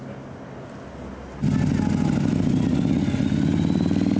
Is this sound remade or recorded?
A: recorded